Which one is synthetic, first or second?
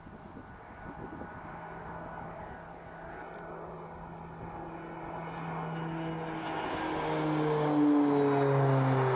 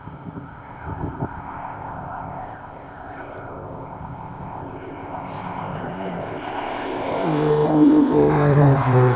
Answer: second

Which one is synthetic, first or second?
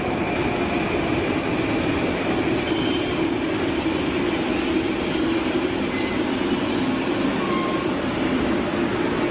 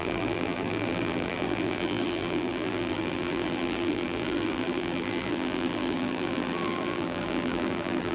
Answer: second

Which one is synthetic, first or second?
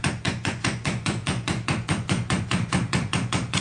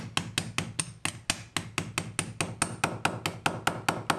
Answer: first